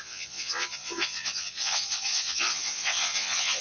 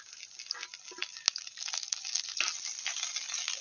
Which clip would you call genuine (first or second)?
second